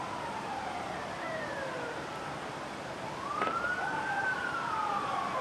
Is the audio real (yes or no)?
yes